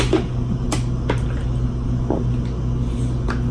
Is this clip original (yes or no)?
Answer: yes